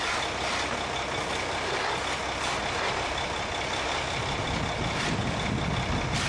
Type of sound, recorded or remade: recorded